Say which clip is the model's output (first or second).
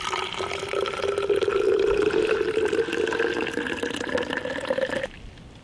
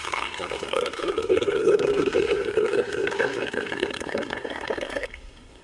second